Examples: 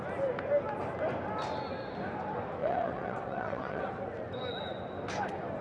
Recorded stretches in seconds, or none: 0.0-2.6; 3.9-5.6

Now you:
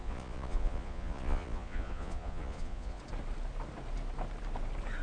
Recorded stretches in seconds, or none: 3.0-5.0

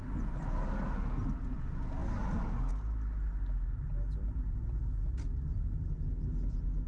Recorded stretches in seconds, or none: 0.0-6.9

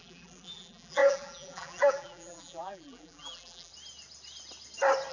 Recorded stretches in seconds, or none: 3.7-5.1

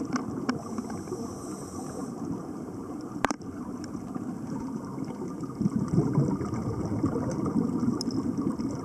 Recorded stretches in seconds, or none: 0.0-2.0; 3.4-8.8

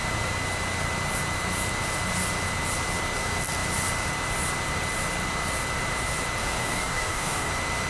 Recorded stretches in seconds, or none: 0.0-6.4; 7.5-7.9